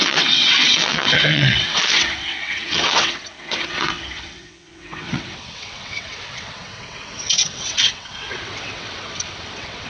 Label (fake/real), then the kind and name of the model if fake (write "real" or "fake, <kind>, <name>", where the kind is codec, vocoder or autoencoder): fake, vocoder, WaveNeXt